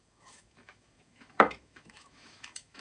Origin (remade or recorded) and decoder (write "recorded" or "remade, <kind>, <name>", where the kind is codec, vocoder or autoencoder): remade, autoencoder, DAC-VAE